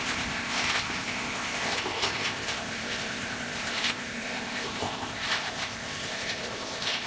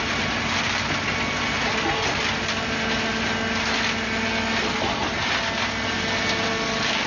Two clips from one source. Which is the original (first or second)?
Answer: second